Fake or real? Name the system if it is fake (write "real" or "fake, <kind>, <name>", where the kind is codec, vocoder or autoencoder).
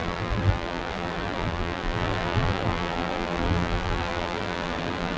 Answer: fake, vocoder, BigVGAN v2